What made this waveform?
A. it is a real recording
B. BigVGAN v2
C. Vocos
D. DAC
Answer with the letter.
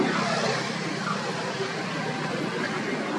A